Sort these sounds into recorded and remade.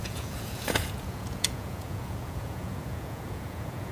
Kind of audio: remade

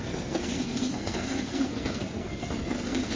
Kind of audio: remade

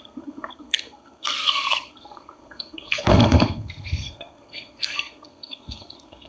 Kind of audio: remade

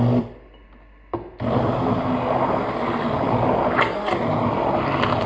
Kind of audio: recorded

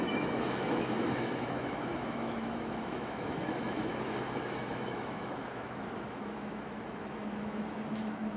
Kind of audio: remade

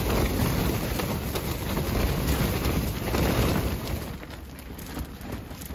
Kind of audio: recorded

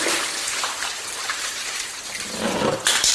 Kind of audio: recorded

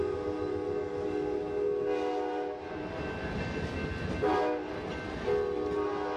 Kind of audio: recorded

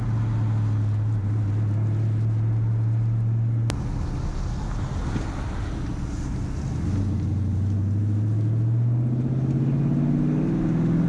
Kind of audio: recorded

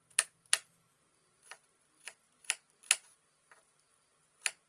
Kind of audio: recorded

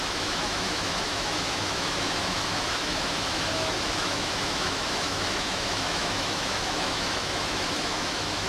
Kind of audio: remade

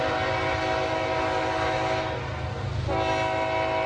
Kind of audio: recorded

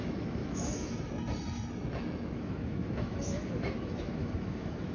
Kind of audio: remade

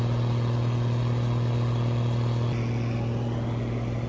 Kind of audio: recorded